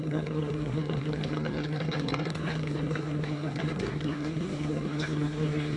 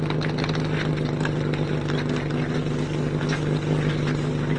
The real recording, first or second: second